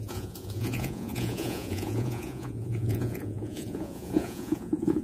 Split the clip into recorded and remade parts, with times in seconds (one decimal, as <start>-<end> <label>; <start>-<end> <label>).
0.0-5.0 remade